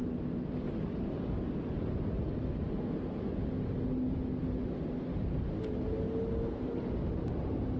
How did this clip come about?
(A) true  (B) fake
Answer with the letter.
A